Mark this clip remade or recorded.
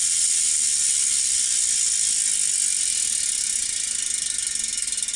recorded